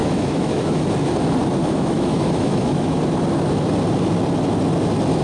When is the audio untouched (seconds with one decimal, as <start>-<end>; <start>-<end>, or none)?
0.8-1.6; 3.0-5.2